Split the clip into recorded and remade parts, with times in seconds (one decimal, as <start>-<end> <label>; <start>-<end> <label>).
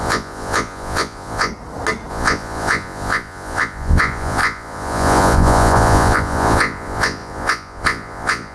0.0-1.5 remade; 1.5-2.1 recorded; 2.1-8.5 remade